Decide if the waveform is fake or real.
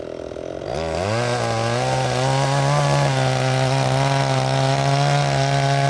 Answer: real